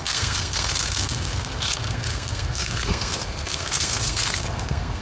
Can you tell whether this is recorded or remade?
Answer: remade